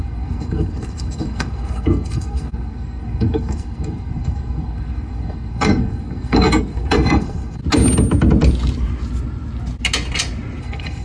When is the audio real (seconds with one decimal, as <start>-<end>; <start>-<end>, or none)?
7.6-10.6